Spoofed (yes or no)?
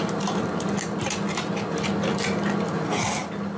no